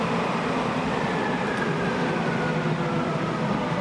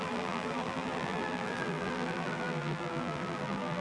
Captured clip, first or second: first